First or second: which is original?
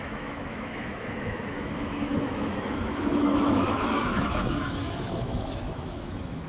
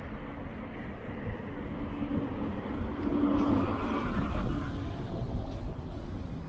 second